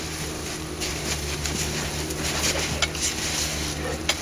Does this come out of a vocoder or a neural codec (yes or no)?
no